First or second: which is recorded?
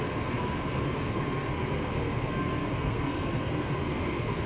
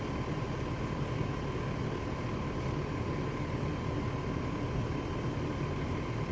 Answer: second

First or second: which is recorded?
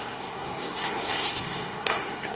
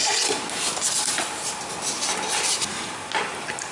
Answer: second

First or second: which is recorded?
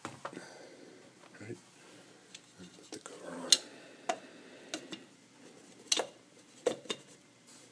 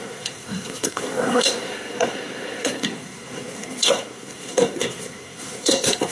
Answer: first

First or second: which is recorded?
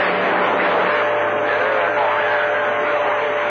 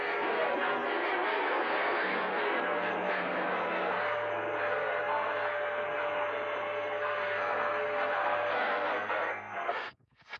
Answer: first